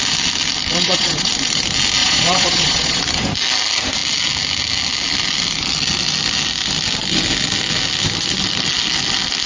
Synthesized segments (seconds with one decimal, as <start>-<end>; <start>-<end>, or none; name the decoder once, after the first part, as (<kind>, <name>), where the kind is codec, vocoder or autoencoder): 0.7-1.3 (vocoder, Vocos); 2.0-3.0